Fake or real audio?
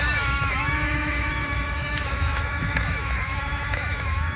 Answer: fake